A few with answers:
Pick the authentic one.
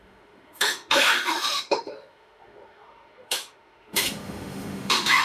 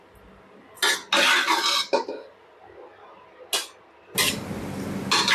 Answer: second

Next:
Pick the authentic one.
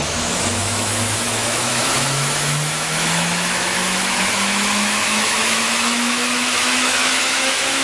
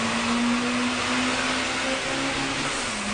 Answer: second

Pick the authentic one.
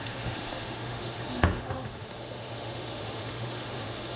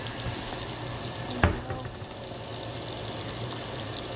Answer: second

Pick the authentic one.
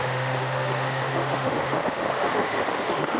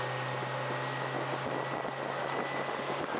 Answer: second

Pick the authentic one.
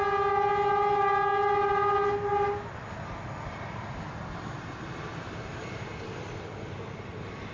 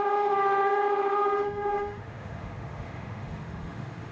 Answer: first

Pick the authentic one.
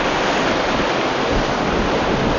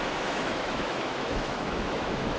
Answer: first